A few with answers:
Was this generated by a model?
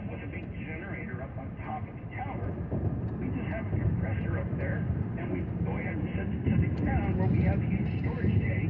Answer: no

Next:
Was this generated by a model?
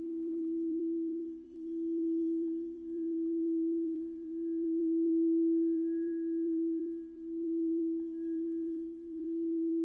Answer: yes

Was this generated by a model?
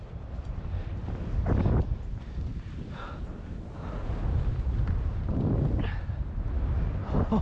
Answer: no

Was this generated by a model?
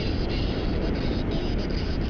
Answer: no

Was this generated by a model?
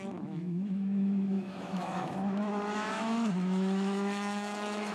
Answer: yes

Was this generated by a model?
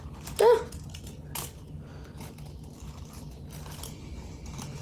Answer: no